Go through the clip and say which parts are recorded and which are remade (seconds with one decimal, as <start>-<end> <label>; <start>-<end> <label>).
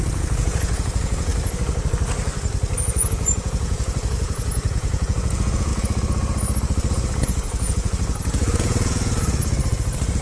0.0-1.3 remade; 1.3-2.8 recorded; 2.8-5.7 remade; 5.7-7.2 recorded; 7.2-10.2 remade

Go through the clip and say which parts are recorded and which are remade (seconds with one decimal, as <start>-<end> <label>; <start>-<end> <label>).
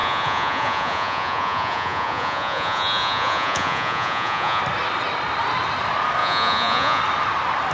0.0-4.6 remade; 4.6-6.2 recorded; 6.2-7.0 remade; 7.0-7.7 recorded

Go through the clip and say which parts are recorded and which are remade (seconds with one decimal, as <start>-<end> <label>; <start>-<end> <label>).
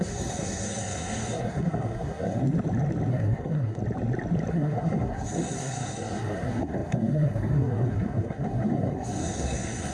0.0-2.4 remade; 2.4-3.1 recorded; 3.1-3.8 remade; 3.8-4.5 recorded; 4.5-9.9 remade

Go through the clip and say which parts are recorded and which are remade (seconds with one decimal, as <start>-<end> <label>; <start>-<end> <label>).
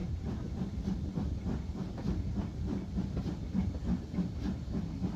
0.0-0.9 remade; 0.9-5.2 recorded